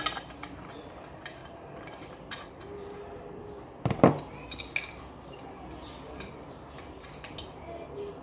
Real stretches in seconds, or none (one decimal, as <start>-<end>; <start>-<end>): 0.0-1.4; 2.6-8.2